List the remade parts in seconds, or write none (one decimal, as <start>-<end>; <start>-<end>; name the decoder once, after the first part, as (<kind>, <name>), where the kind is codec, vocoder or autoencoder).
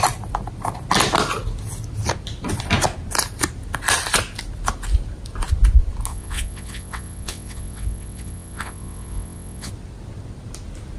6.1-9.7 (vocoder, WaveNeXt)